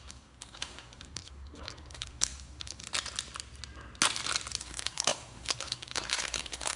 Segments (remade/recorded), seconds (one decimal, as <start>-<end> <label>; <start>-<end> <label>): 0.0-2.8 remade; 2.8-4.6 recorded; 4.6-6.8 remade